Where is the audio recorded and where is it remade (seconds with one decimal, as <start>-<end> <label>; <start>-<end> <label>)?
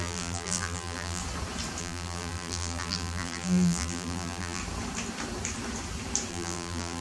0.0-1.2 remade; 1.2-1.8 recorded; 1.8-4.6 remade; 4.6-6.3 recorded; 6.3-7.0 remade